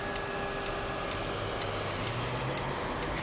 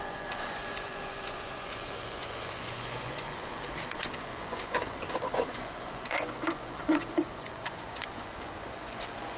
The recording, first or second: first